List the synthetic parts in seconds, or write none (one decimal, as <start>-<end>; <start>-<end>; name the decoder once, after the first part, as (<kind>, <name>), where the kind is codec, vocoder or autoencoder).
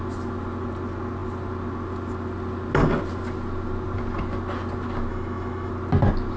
5.1-5.7 (autoencoder, DAC-VAE)